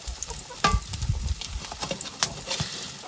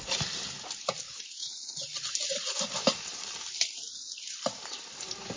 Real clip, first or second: first